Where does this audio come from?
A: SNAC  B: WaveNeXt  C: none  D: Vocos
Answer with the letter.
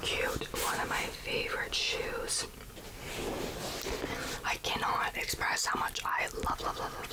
C